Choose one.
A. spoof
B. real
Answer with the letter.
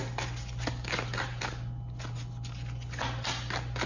B